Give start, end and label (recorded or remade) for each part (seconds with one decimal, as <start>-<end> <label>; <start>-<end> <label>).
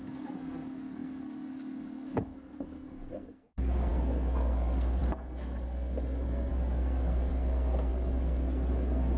0.0-9.2 remade